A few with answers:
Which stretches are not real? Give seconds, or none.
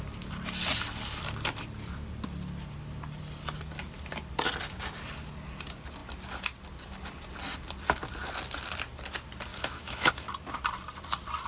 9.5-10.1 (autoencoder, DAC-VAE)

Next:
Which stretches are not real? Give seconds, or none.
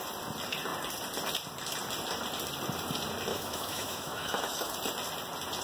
3.3-4.7 (autoencoder, DAC-VAE)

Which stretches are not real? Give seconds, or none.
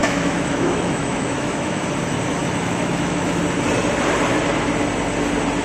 0.0-1.8 (autoencoder, DAC-VAE); 2.4-3.4